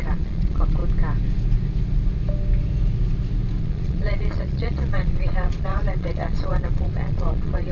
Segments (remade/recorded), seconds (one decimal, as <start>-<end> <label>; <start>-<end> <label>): 0.0-0.8 remade; 0.8-3.6 recorded; 3.6-7.7 remade